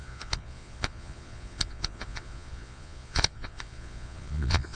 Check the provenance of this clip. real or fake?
fake